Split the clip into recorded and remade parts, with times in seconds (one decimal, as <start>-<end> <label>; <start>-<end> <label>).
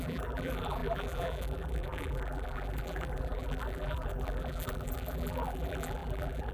0.0-6.5 remade